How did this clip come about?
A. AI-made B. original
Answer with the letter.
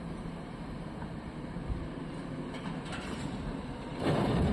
A